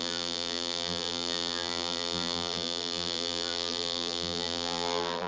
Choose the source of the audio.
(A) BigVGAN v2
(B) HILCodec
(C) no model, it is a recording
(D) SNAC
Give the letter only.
A